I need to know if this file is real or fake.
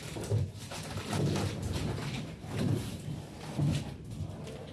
fake